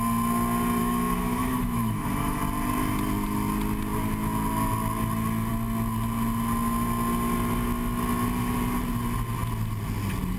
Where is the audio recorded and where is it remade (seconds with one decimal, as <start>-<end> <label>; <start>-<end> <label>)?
0.0-0.8 recorded; 0.8-2.4 remade; 2.4-10.4 recorded